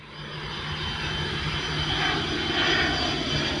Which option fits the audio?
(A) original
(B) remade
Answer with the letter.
A